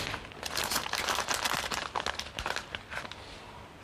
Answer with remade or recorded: recorded